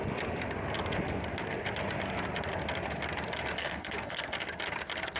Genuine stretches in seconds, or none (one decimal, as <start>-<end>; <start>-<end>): 0.0-3.6; 4.3-5.2